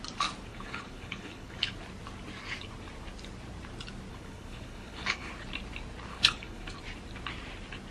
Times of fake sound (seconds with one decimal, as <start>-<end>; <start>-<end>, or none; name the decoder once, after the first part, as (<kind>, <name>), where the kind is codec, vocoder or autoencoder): 0.5-1.7 (codec, HILCodec); 4.1-5.3; 6.1-6.8